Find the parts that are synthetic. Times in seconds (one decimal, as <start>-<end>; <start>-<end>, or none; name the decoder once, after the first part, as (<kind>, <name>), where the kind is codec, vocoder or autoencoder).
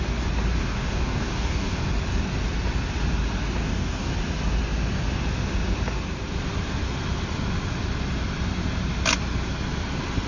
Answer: 0.6-1.8 (codec, DAC); 3.6-4.1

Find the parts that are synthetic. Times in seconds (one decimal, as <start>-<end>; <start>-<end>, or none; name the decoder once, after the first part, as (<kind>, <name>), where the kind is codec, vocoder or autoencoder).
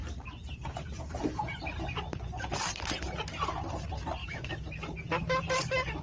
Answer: 4.2-4.7 (autoencoder, DAC-VAE)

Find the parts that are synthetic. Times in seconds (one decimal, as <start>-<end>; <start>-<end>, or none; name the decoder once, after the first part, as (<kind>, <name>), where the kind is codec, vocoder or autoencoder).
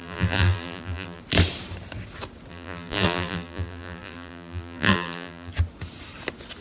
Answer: 0.0-1.2 (vocoder, BigVGAN v2); 2.5-5.5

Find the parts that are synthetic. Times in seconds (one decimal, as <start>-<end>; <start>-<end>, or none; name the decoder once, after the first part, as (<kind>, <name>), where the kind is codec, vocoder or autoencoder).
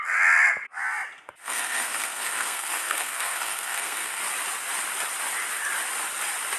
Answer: 1.4-4.2 (codec, SNAC)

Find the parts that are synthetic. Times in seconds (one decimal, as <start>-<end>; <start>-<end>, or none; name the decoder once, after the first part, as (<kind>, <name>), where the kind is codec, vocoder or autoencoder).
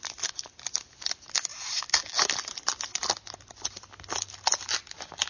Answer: none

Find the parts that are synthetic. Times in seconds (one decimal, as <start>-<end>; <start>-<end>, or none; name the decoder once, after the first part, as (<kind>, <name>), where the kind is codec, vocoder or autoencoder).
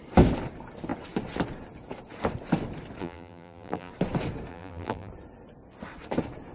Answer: 3.0-3.9 (vocoder, BigVGAN v2); 4.5-5.1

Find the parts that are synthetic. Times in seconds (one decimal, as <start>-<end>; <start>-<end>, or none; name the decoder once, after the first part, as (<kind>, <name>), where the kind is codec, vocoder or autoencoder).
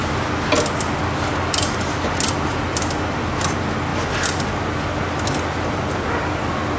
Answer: none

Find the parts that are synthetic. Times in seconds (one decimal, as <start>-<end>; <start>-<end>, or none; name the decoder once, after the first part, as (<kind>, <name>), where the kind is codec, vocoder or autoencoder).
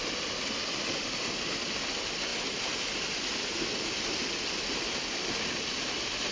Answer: none